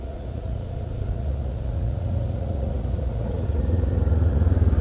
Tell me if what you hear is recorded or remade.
remade